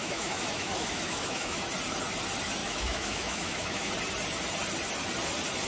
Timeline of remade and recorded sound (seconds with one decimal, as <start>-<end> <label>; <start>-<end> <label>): 0.0-1.6 remade; 1.6-2.6 recorded; 2.6-3.9 remade; 3.9-5.7 recorded